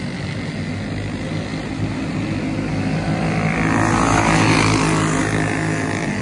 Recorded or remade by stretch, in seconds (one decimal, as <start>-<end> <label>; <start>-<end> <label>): 0.0-6.2 recorded